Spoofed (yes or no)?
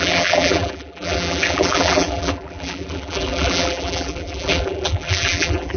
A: yes